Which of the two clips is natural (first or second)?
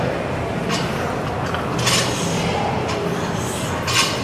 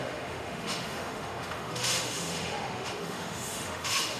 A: first